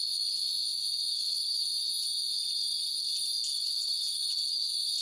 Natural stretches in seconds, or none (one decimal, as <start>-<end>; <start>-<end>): 0.0-1.1; 1.6-3.5; 4.2-5.0